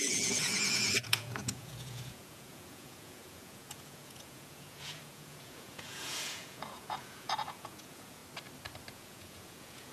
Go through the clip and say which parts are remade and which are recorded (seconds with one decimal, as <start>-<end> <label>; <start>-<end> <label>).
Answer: 0.0-8.2 remade; 8.2-8.9 recorded; 8.9-9.9 remade